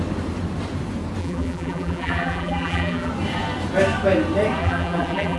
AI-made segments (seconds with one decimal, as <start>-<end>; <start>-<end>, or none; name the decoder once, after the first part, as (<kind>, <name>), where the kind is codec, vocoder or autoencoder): 1.2-3.1 (vocoder, BigVGAN v2); 4.6-5.4